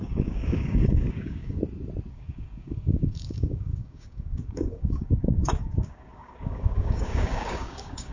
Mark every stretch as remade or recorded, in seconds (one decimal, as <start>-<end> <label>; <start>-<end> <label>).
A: 0.0-1.6 remade; 1.6-2.1 recorded; 2.1-8.1 remade